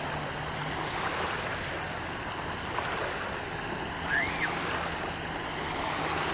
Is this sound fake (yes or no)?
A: no